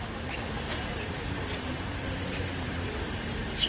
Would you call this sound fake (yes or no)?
yes